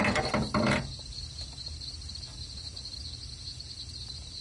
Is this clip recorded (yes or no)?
yes